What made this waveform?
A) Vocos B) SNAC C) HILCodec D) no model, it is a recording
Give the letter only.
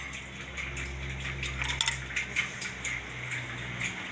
D